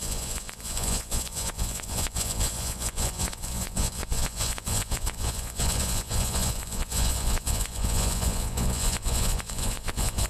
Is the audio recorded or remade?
remade